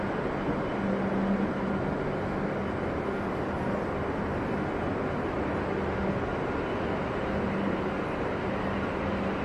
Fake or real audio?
real